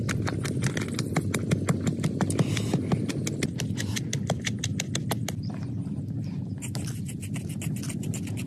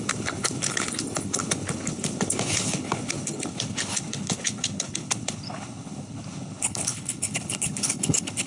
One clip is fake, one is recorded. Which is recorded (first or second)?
first